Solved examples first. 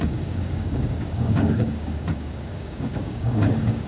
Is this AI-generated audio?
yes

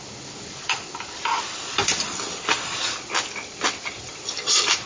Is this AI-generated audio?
no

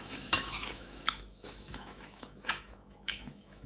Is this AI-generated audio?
yes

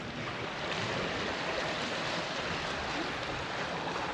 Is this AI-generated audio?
no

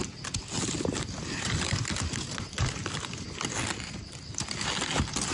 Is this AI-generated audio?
no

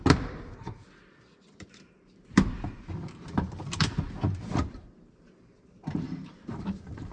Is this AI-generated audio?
yes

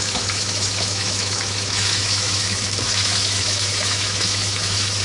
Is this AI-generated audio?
yes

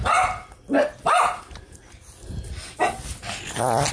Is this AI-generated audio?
no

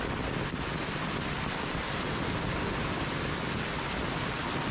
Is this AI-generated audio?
no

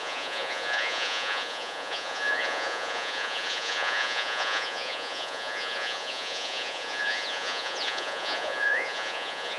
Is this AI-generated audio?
yes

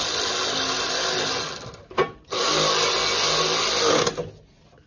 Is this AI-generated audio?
no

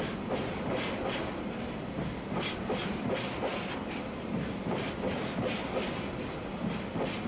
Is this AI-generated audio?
no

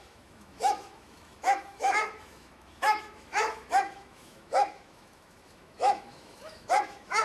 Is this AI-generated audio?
yes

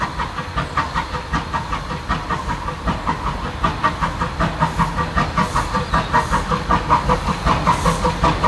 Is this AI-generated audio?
no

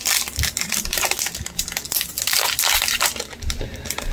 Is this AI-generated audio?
no